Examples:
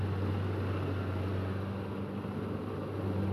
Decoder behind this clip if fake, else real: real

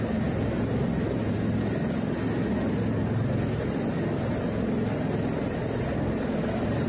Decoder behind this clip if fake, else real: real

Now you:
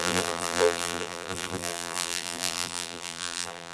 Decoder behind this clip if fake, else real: fake, vocoder, BigVGAN v2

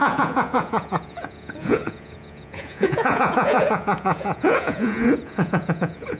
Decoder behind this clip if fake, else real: fake, vocoder, Vocos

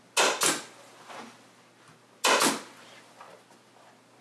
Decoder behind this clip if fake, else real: real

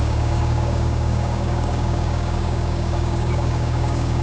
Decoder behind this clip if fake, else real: fake, codec, DAC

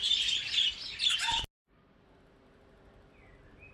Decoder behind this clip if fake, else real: real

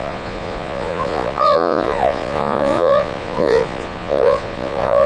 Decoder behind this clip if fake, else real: fake, vocoder, Vocos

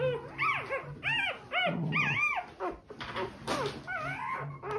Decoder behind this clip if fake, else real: real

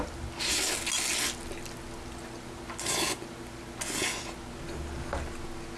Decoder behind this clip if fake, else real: real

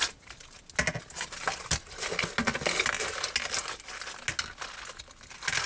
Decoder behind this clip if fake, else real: real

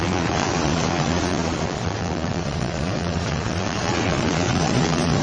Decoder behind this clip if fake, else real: fake, vocoder, Vocos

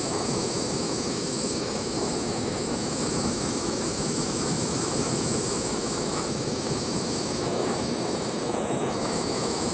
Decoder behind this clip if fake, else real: fake, autoencoder, DAC-VAE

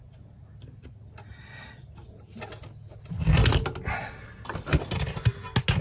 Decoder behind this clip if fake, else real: real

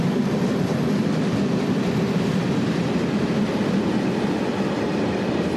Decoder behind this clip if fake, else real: real